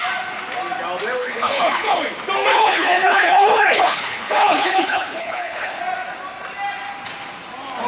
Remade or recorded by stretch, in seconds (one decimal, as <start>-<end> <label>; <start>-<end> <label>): 0.0-1.2 recorded; 1.2-2.0 remade; 2.0-2.5 recorded; 2.5-5.8 remade; 5.8-7.9 recorded